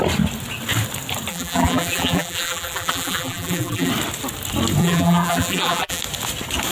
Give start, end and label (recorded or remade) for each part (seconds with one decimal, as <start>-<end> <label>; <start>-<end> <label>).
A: 0.0-1.3 recorded; 1.3-3.9 remade; 3.9-4.8 recorded; 4.8-6.0 remade; 6.0-6.7 recorded